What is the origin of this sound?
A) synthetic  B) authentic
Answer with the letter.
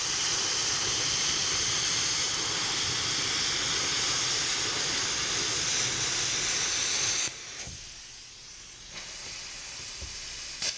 B